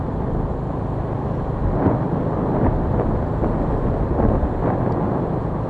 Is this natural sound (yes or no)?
yes